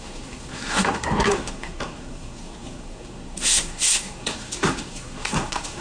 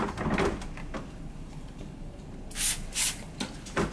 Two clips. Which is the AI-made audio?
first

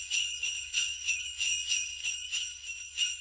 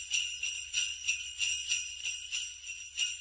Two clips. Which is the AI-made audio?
first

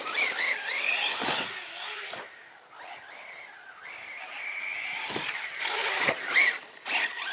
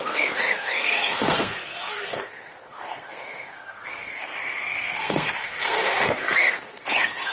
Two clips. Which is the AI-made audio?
second